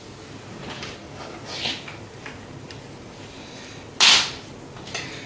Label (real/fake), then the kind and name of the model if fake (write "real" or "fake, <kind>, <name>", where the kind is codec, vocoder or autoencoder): real